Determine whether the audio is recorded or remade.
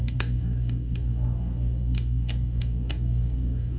remade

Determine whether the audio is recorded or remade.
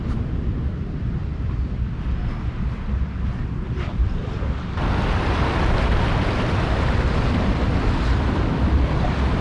recorded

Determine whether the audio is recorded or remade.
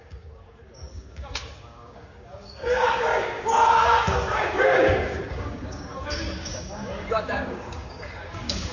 remade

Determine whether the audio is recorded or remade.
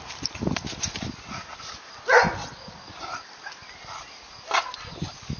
recorded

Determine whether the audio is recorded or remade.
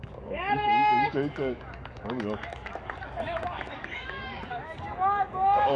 remade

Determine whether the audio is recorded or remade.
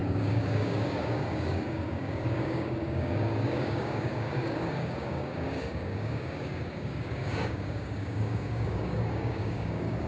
remade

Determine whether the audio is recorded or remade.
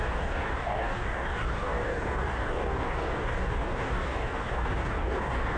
remade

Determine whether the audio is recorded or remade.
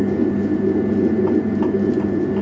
recorded